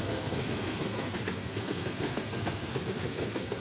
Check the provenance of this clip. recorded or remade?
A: remade